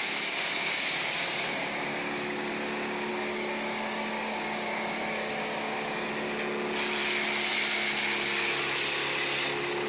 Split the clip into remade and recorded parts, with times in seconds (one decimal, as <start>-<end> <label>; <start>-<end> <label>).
0.0-2.5 remade; 2.5-3.1 recorded; 3.1-6.1 remade; 6.1-9.9 recorded